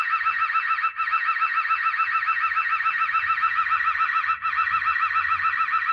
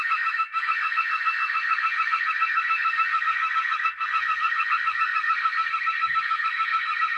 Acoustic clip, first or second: first